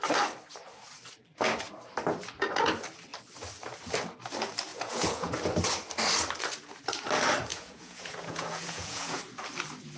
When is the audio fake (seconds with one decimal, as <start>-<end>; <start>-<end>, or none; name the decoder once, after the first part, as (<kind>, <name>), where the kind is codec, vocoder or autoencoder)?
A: 4.7-5.3 (vocoder, Vocos); 7.5-9.2